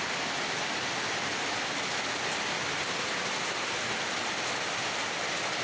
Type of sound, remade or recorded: remade